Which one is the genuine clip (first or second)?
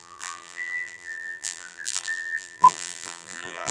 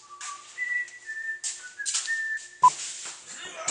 second